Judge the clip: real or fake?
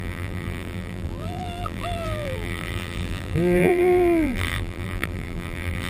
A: fake